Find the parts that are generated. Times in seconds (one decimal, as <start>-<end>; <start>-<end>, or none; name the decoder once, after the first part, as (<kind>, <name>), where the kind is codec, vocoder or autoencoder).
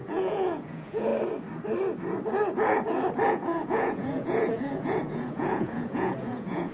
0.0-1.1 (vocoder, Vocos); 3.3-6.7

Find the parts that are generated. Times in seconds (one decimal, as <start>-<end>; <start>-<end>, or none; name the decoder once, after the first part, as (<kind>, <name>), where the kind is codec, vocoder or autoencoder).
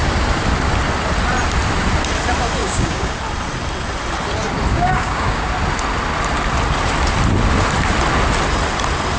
2.6-3.2 (codec, DAC); 4.7-5.5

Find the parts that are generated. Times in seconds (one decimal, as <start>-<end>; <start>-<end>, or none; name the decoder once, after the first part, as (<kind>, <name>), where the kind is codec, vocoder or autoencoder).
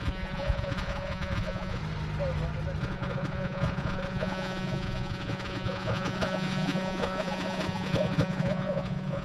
0.0-1.8 (vocoder, Vocos); 2.8-9.2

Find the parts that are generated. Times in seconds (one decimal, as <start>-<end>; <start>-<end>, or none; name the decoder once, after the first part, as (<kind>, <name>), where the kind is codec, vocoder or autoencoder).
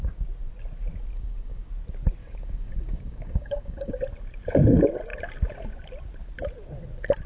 1.1-1.7 (codec, DAC); 2.2-4.0